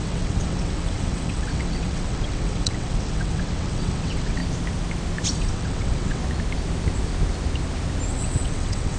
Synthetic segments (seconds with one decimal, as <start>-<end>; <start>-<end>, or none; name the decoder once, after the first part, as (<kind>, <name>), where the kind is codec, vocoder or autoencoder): 0.0-4.4 (vocoder, WaveNeXt); 5.3-6.2; 8.1-9.0